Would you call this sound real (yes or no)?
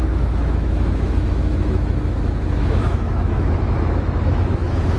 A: no